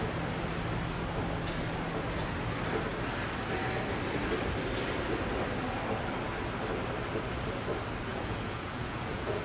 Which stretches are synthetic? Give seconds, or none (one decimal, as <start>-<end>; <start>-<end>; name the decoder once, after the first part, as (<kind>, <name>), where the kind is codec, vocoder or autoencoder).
8.1-9.4 (vocoder, Vocos)